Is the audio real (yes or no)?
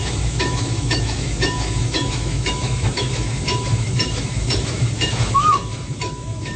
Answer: no